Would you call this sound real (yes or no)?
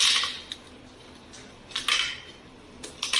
yes